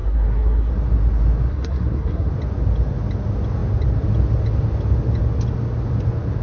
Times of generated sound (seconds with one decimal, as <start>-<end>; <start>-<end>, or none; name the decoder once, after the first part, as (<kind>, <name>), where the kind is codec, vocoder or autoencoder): 0.0-0.7 (codec, SNAC); 1.5-2.3